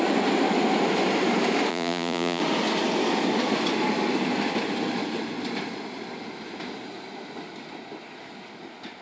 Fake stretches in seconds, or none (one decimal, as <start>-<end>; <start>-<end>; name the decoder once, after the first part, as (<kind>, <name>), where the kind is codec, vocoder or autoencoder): 1.7-2.4 (vocoder, Vocos)